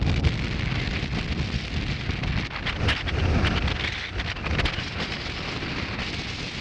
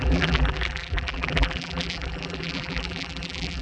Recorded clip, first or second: first